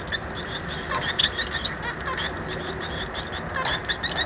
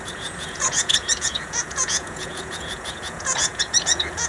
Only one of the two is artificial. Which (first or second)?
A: second